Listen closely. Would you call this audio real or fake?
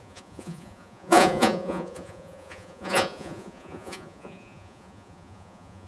fake